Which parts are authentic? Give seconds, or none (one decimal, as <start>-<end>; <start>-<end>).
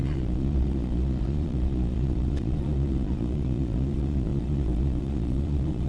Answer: none